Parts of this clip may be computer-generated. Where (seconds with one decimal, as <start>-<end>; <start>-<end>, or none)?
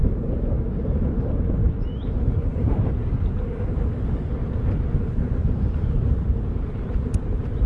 1.6-3.7; 4.4-7.7